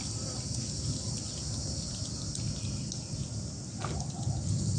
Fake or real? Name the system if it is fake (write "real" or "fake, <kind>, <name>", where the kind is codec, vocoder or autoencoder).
real